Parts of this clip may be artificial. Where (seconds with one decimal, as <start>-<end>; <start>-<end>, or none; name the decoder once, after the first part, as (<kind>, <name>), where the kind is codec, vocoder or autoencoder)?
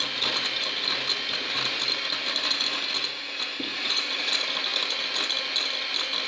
3.7-4.3 (vocoder, Vocos)